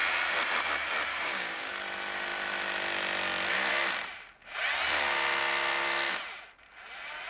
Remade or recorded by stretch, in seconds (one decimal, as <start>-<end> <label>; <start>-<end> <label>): 0.0-1.1 recorded; 1.1-1.7 remade; 1.7-7.3 recorded